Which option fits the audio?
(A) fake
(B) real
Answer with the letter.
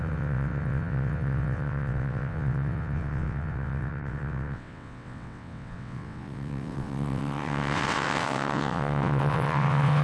A